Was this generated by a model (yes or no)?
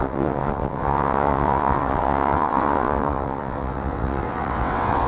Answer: yes